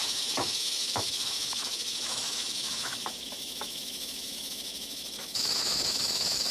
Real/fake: fake